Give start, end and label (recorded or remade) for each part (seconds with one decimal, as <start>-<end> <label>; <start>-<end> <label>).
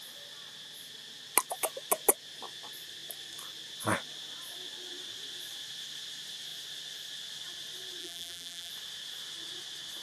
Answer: 0.0-8.0 recorded; 8.0-8.7 remade; 8.7-10.0 recorded